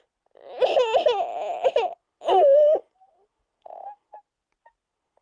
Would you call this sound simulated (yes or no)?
no